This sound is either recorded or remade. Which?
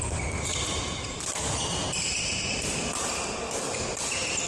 recorded